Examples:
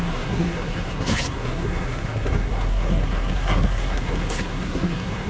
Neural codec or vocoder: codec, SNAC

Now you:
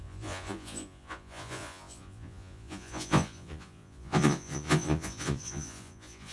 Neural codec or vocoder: vocoder, Vocos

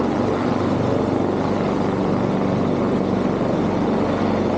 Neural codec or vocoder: none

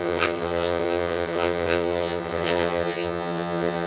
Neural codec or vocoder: vocoder, HiFi-GAN